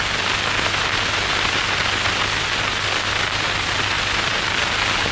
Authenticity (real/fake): real